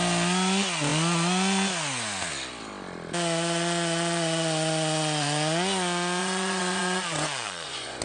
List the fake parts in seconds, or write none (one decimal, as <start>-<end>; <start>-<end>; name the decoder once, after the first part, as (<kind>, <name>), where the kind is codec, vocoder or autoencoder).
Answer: 6.2-8.0 (vocoder, Vocos)

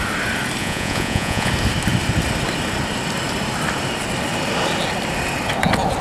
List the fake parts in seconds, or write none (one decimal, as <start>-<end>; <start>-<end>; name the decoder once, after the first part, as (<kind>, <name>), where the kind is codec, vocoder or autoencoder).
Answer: 0.6-1.5 (vocoder, Vocos)

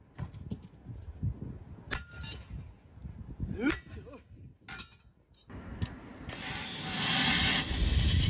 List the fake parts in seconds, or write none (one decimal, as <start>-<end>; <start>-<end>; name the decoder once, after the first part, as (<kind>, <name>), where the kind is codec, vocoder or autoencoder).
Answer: none